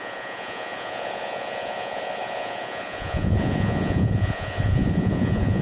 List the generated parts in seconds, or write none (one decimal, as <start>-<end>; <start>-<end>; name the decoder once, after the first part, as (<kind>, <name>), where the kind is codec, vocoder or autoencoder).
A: 0.0-5.6 (vocoder, Vocos)